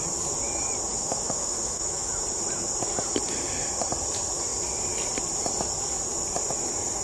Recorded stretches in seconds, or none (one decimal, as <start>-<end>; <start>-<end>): 0.0-0.9; 2.1-7.0